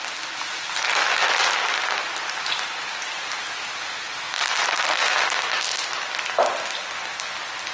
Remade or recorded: recorded